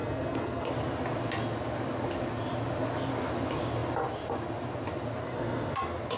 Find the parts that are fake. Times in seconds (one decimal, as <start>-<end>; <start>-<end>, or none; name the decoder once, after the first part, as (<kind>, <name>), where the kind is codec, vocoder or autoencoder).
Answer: 0.0-0.7 (codec, SNAC); 5.2-5.8